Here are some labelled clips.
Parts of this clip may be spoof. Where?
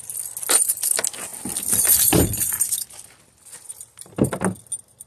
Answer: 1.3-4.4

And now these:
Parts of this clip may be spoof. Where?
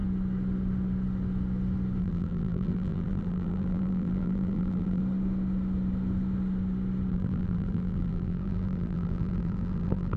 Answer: 2.0-5.0; 7.1-10.2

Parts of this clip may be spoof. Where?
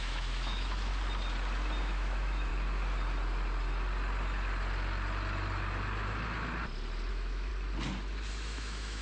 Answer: 0.0-0.9; 1.8-2.5; 7.1-7.5; 8.3-9.0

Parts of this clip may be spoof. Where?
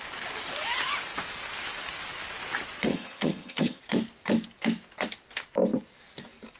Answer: 2.9-3.8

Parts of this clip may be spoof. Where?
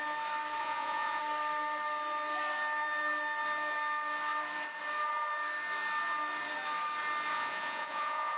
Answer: 0.6-1.2; 7.3-8.4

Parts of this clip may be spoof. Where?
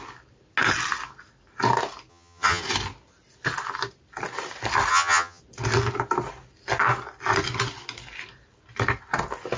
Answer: 2.1-2.6; 4.9-5.4